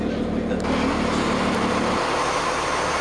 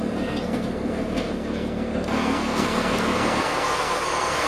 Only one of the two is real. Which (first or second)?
first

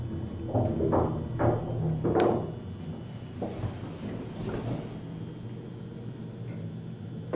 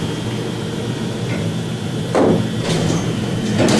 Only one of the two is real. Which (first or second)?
first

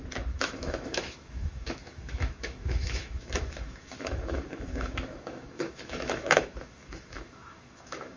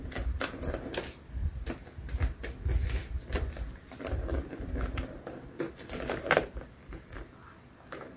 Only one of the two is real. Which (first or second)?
second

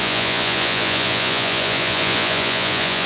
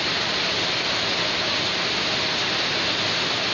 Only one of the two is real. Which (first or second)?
second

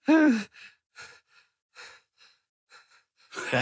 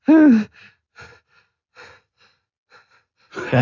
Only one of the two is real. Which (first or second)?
second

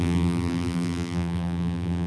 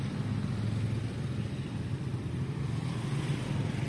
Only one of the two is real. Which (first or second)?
second